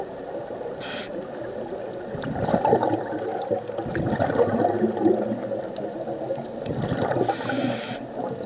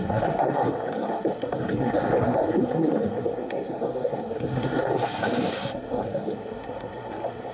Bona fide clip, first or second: first